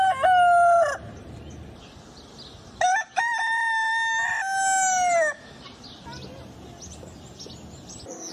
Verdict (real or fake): real